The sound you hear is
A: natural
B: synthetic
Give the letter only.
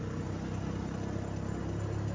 A